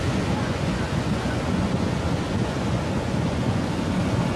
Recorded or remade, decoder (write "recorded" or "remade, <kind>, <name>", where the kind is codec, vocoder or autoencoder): remade, vocoder, Vocos